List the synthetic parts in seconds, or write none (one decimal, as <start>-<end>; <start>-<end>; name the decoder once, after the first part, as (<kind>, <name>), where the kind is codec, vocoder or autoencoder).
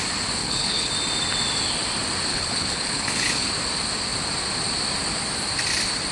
0.4-0.9 (codec, HILCodec); 2.3-3.5